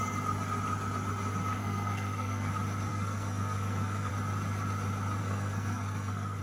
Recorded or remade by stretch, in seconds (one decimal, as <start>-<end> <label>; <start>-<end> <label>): 0.0-1.6 recorded; 1.6-2.5 remade; 2.5-2.9 recorded; 2.9-4.1 remade; 4.1-5.2 recorded; 5.2-6.4 remade

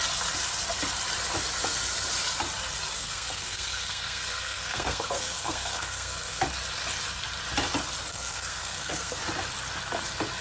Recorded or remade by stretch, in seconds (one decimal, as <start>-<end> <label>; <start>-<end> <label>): 0.0-3.0 recorded; 3.0-6.4 remade; 6.4-8.1 recorded; 8.1-9.2 remade; 9.2-10.4 recorded

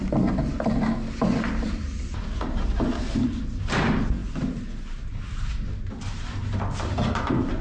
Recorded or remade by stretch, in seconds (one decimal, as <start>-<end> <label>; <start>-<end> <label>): 0.0-7.6 recorded

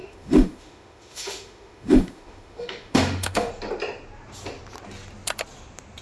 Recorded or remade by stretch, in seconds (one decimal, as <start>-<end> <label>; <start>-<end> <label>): 0.0-3.5 remade; 3.5-6.0 recorded

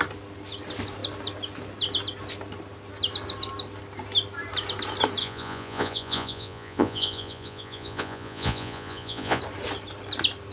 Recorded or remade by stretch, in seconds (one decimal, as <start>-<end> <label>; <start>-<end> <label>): 0.0-5.2 recorded; 5.2-9.4 remade; 9.4-10.5 recorded